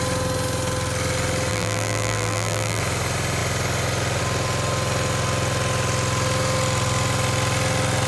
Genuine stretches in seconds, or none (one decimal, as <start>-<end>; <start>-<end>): 0.0-1.5; 2.8-8.1